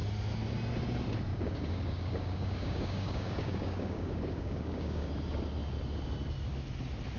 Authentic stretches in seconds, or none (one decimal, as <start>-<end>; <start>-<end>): 0.0-1.3; 5.1-7.2